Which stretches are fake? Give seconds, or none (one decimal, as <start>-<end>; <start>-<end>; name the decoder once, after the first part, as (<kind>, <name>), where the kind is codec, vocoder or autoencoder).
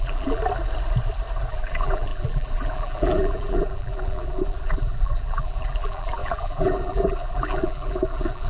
0.0-0.4 (vocoder, BigVGAN v2); 1.5-8.5